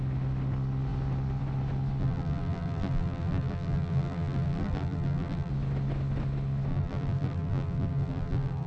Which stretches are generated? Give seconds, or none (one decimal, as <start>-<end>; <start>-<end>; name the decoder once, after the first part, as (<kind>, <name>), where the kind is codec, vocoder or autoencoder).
2.0-5.5 (vocoder, BigVGAN v2); 6.7-8.7